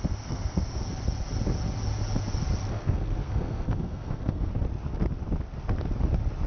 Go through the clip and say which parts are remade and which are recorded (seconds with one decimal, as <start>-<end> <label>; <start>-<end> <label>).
0.0-0.8 remade; 0.8-2.7 recorded; 2.7-4.5 remade; 4.5-6.5 recorded